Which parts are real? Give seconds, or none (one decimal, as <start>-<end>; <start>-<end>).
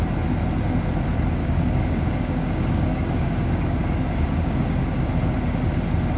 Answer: 0.0-1.4; 5.1-6.2